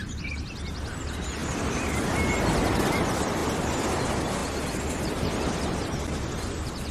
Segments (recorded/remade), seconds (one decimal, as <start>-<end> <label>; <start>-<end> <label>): 0.0-6.9 recorded